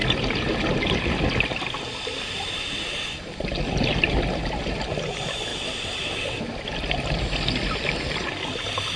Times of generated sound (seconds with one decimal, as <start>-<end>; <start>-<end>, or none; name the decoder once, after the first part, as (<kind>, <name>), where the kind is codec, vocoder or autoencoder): 5.5-6.4 (vocoder, WaveNeXt)